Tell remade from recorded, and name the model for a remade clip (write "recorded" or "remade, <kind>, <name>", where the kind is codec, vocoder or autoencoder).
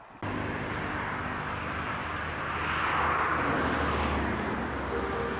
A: recorded